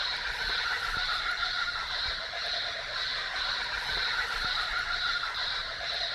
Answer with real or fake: real